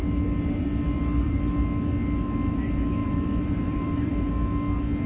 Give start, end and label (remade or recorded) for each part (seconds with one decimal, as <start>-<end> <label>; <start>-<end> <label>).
0.0-1.4 remade; 1.4-3.0 recorded; 3.0-4.3 remade; 4.3-5.1 recorded

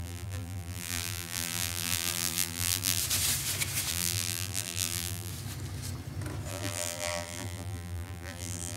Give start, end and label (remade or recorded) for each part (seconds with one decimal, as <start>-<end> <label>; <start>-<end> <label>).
0.0-3.0 remade; 3.0-3.9 recorded; 3.9-5.3 remade; 5.3-6.5 recorded; 6.5-8.8 remade

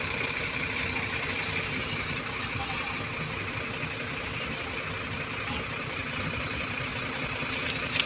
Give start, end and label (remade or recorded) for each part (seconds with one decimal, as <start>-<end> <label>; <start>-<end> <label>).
0.0-2.6 remade; 2.6-5.5 recorded; 5.5-6.9 remade; 6.9-8.1 recorded

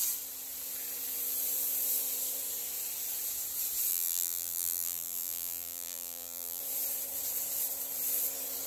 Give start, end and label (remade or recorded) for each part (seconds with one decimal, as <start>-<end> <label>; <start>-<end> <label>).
0.0-3.9 recorded; 3.9-6.6 remade; 6.6-8.7 recorded

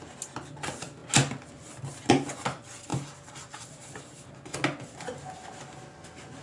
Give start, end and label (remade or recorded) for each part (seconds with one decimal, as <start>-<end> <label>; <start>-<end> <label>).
0.0-2.9 recorded; 2.9-4.2 remade; 4.2-6.4 recorded